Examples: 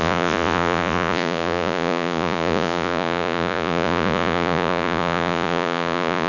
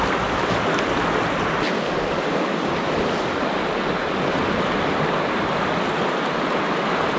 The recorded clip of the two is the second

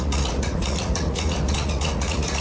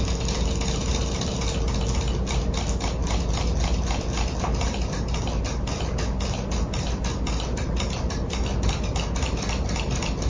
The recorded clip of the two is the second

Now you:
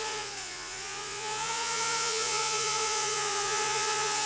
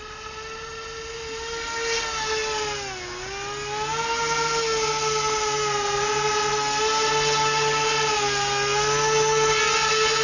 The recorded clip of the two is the second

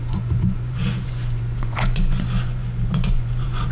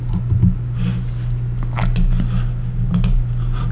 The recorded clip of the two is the second